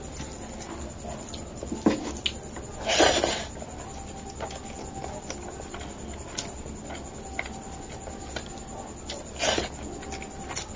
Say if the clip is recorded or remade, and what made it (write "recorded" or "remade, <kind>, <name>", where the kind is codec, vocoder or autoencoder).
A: recorded